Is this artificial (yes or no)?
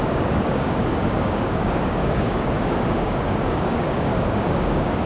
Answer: yes